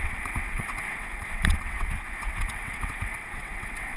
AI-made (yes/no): yes